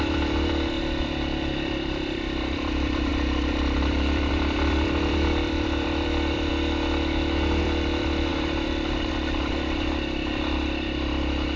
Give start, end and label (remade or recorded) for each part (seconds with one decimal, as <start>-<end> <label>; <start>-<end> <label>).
0.0-6.5 remade; 6.5-7.6 recorded; 7.6-11.6 remade